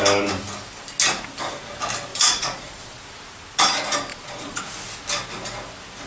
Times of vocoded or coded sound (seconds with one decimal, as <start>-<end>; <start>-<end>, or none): 2.1-3.0; 4.1-4.6